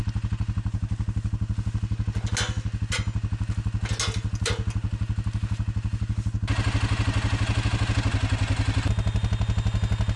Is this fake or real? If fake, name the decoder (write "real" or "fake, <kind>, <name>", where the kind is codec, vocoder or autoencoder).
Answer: real